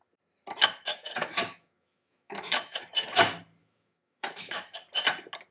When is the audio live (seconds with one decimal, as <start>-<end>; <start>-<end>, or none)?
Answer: 0.0-0.9; 2.8-3.6; 4.6-5.5

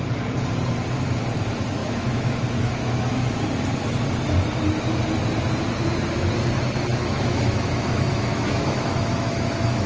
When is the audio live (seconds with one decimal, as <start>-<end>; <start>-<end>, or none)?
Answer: 0.0-1.8; 3.4-6.9

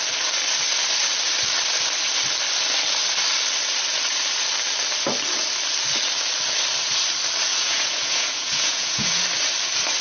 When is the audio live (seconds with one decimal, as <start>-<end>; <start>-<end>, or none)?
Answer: 0.0-7.5; 9.2-10.0